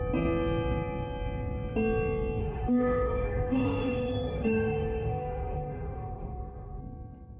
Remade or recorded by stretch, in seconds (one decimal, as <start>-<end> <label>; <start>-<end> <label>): 0.0-2.4 recorded; 2.4-6.8 remade; 6.8-7.4 recorded